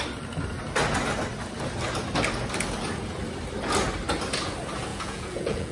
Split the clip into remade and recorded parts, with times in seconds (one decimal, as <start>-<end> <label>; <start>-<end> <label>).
0.0-4.9 recorded; 4.9-5.7 remade